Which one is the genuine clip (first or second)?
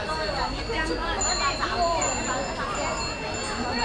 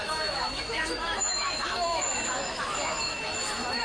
first